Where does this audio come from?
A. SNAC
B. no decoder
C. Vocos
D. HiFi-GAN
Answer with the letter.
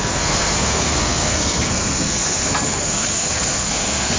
A